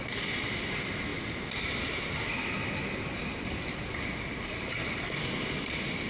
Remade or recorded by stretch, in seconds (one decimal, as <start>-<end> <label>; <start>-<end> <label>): 0.0-6.1 recorded